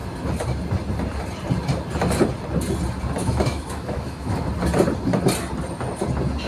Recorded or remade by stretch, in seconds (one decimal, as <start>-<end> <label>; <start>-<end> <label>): 0.0-3.2 recorded; 3.2-4.5 remade; 4.5-6.5 recorded